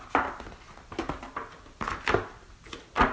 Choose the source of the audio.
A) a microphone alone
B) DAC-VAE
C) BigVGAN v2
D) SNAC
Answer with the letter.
A